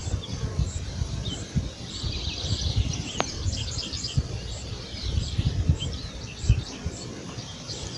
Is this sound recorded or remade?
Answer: remade